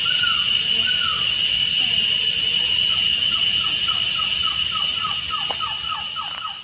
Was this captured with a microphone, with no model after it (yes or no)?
yes